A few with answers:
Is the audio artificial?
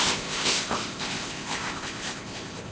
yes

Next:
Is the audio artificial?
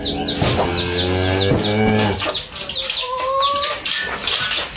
no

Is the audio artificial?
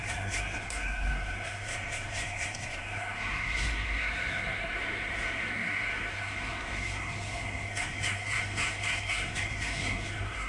yes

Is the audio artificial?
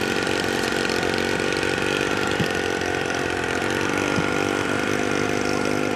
no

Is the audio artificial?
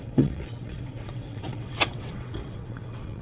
yes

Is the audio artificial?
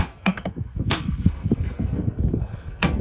yes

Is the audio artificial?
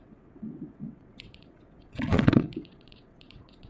yes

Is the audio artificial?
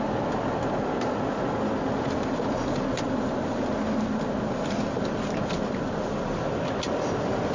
no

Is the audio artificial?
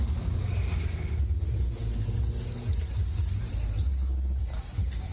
no